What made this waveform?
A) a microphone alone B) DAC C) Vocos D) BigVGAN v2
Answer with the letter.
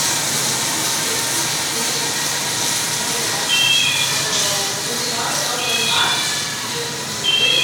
A